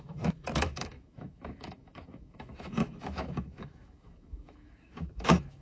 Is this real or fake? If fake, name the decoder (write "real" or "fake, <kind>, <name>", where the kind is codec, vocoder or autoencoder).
fake, autoencoder, DAC-VAE